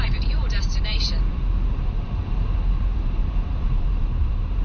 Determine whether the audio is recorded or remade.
remade